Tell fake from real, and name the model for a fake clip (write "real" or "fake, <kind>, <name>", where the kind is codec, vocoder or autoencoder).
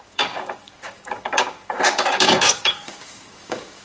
fake, codec, DAC